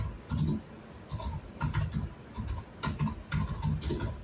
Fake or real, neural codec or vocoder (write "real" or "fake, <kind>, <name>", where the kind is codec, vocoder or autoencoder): real